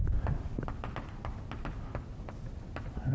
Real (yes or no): yes